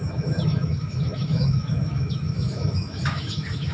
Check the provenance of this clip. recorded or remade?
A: remade